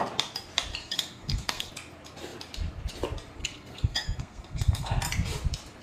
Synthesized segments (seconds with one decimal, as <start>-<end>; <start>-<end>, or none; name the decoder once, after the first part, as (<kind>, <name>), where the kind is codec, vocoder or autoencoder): 0.8-1.7 (codec, SNAC); 3.4-5.0